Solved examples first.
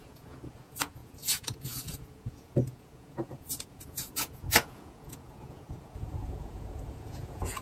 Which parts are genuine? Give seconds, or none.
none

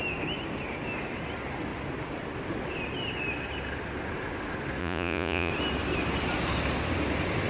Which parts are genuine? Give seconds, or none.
0.0-4.8; 5.5-7.5

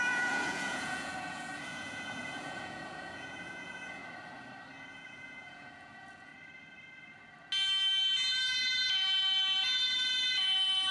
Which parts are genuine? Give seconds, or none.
4.0-4.9; 6.3-10.9

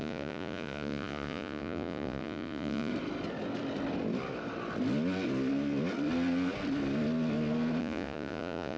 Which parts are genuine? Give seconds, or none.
2.9-7.8